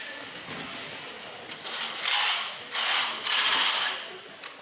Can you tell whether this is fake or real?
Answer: real